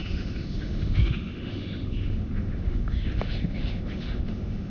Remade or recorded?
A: remade